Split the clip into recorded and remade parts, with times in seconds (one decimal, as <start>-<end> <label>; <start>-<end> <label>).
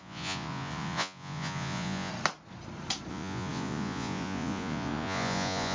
0.0-2.1 remade; 2.1-3.1 recorded; 3.1-5.7 remade